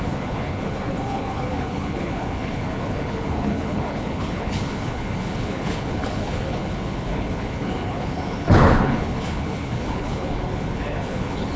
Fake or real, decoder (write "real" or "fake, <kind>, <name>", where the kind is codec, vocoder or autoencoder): fake, codec, HILCodec